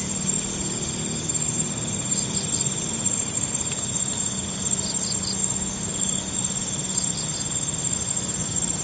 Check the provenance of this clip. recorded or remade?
recorded